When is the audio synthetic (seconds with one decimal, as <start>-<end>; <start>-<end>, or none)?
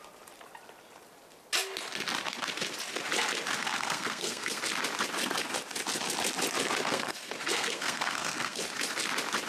3.6-4.6; 6.9-8.6